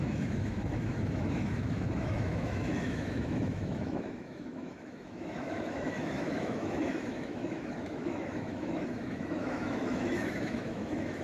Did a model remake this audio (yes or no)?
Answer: yes